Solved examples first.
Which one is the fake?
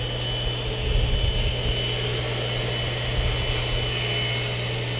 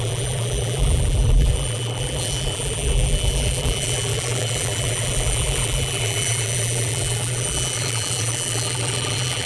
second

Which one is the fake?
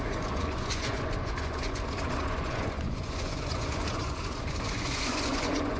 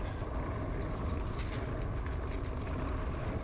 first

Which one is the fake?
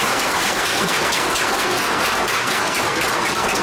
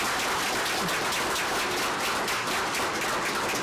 first